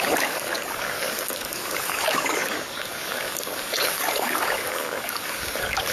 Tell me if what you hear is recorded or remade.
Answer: remade